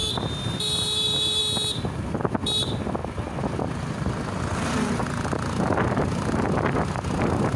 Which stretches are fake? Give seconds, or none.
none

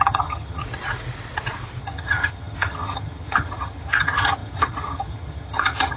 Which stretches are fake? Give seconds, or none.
0.0-0.6 (vocoder, HiFi-GAN); 1.8-6.0